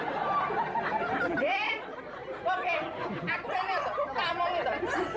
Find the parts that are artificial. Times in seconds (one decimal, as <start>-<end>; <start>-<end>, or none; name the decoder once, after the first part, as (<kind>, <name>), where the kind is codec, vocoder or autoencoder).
0.0-5.2 (vocoder, BigVGAN v2)

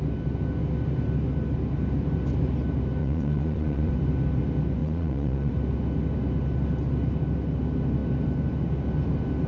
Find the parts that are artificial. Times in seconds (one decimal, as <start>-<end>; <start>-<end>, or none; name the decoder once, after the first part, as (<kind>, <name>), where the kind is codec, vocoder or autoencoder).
3.0-3.9 (vocoder, Vocos); 4.8-5.5

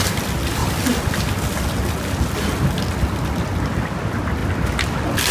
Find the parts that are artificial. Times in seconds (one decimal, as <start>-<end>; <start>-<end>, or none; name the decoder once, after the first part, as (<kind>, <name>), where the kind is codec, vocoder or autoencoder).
none

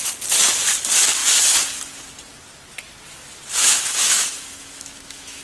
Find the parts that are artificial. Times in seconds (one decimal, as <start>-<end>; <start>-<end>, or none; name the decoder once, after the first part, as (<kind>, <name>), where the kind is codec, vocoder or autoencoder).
3.6-5.4 (autoencoder, DAC-VAE)

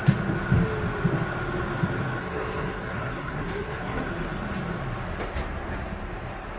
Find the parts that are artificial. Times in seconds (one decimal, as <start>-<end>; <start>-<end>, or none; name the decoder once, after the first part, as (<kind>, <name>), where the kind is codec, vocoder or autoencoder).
2.2-4.1 (codec, SNAC)